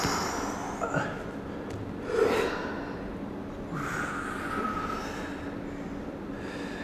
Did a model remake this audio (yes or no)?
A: no